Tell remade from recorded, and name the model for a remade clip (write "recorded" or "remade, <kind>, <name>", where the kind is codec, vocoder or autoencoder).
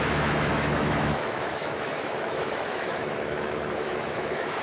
remade, autoencoder, DAC-VAE